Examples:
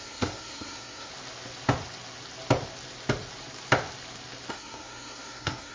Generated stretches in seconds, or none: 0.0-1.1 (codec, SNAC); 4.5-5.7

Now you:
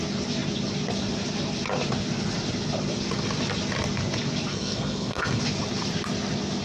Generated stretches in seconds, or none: 4.5-5.4 (codec, SNAC)

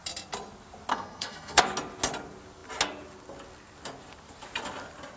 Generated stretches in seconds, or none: 0.9-1.6 (codec, SNAC)